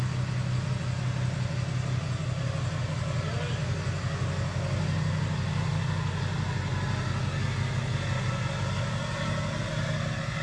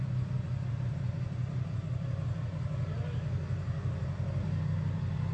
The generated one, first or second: second